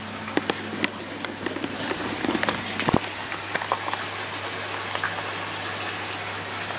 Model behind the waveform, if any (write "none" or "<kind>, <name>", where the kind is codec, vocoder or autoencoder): none